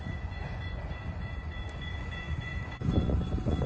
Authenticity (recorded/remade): remade